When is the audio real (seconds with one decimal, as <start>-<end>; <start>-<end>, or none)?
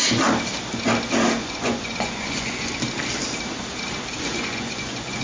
0.0-1.4; 2.7-4.1